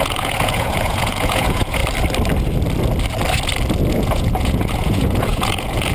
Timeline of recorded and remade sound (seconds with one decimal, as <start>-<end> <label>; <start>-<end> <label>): 0.0-1.8 remade; 1.8-3.9 recorded; 3.9-5.9 remade